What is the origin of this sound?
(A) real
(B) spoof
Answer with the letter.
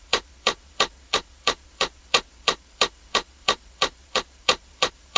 B